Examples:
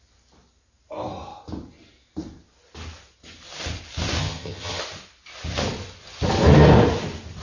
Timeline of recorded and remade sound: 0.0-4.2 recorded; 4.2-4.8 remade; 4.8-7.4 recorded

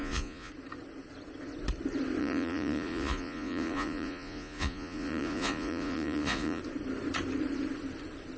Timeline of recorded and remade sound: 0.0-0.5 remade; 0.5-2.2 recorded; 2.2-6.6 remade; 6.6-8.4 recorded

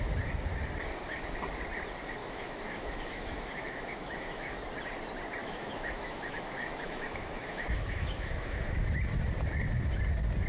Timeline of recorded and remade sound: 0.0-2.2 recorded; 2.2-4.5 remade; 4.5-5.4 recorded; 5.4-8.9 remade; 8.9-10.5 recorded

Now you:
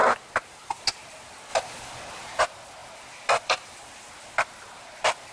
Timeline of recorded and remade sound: 0.0-0.7 remade; 0.7-1.5 recorded; 1.5-2.4 remade; 2.4-2.8 recorded; 2.8-5.3 remade